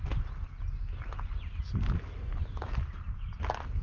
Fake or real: real